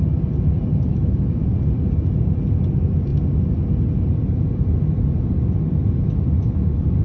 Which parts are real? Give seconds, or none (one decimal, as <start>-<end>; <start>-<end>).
0.0-0.9; 1.5-7.0